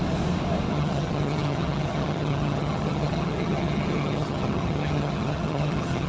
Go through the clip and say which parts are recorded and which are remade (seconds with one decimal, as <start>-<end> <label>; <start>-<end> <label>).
0.0-0.7 recorded; 0.7-6.1 remade